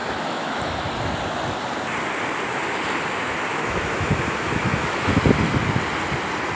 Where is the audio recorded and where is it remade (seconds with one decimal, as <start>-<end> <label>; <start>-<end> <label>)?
0.0-0.6 remade; 0.6-3.5 recorded; 3.5-5.2 remade; 5.2-6.5 recorded